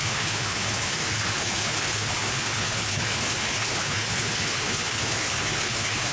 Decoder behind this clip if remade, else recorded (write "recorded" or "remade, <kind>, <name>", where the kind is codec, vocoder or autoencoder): remade, codec, HILCodec